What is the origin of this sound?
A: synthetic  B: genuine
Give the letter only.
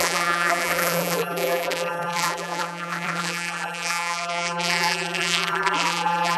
A